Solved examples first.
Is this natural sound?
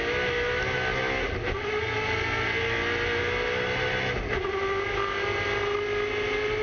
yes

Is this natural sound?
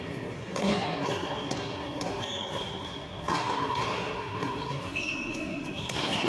no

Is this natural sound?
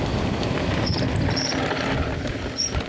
yes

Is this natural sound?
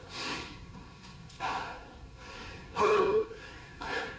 no